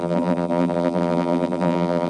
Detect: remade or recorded remade